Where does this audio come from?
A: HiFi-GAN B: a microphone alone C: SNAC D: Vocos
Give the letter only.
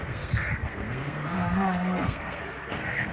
C